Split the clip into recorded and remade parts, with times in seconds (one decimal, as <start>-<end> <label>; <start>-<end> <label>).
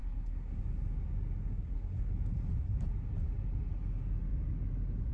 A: 0.0-0.6 remade; 0.6-1.4 recorded; 1.4-2.1 remade; 2.1-5.1 recorded